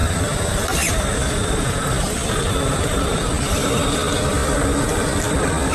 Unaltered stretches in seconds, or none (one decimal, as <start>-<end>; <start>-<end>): 0.0-2.4; 3.3-5.7